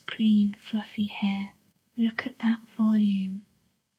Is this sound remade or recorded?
remade